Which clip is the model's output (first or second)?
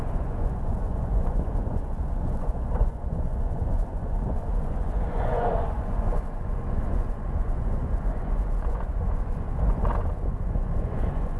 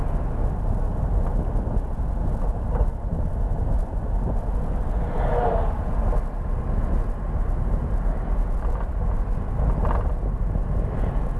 first